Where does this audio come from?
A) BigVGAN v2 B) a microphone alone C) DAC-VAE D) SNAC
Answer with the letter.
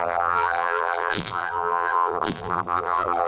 A